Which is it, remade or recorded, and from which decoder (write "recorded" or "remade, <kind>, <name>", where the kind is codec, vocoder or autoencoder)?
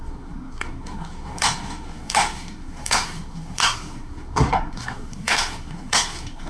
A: remade, codec, SNAC